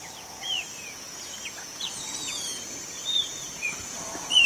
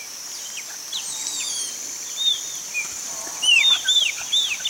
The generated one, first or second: first